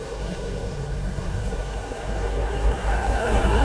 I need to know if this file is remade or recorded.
remade